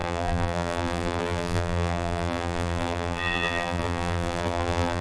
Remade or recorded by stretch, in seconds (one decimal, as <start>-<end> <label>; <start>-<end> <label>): 0.0-5.0 remade